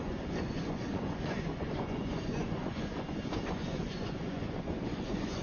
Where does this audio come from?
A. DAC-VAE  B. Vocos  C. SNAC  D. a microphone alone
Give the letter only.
B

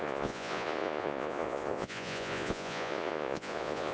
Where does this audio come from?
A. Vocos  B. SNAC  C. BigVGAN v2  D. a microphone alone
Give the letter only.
A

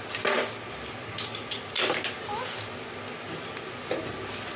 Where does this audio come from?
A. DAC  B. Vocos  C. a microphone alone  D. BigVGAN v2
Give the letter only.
C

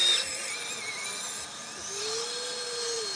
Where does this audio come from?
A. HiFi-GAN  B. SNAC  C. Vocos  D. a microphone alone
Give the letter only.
D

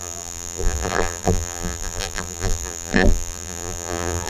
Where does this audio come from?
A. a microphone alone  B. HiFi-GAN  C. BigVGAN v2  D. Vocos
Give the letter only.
C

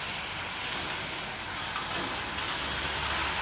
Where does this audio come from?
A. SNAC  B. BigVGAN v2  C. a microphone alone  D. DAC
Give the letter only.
C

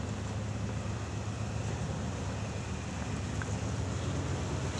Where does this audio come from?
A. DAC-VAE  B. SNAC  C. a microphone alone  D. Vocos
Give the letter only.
C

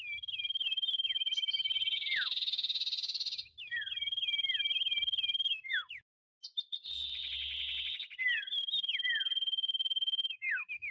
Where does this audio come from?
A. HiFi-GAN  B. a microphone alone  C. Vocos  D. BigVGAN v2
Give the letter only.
B